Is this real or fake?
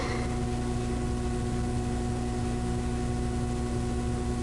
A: real